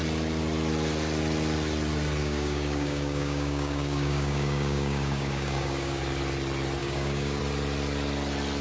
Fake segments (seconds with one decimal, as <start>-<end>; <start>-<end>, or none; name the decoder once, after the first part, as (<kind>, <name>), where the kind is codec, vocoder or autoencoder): 2.2-6.0 (codec, DAC); 6.8-7.4